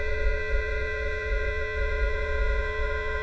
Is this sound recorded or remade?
remade